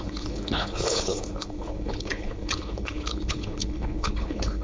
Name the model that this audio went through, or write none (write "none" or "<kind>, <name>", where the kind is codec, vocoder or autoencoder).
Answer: codec, HILCodec